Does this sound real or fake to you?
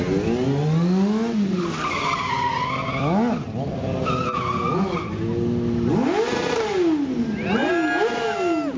real